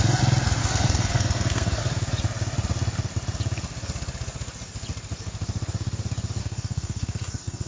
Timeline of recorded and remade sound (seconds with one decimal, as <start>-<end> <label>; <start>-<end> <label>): 0.0-0.6 recorded; 0.6-1.8 remade; 1.8-6.4 recorded; 6.4-7.7 remade